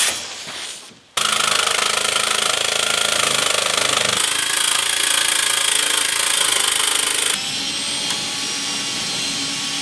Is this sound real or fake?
real